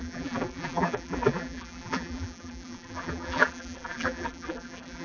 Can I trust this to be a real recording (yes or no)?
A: no